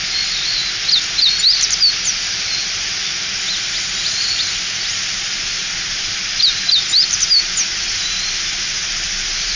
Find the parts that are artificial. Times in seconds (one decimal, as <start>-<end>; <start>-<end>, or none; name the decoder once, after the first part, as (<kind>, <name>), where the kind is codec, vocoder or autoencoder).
none